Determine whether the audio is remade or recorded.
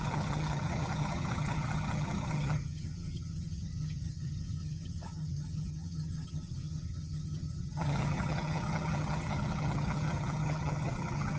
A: remade